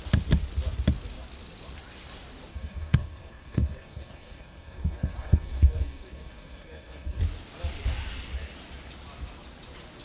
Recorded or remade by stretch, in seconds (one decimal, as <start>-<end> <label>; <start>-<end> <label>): 0.0-2.5 recorded; 2.5-7.2 remade; 7.2-10.0 recorded